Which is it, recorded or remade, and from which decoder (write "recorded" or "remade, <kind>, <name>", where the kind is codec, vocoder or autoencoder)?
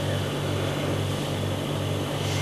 recorded